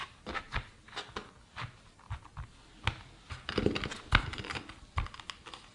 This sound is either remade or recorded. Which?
recorded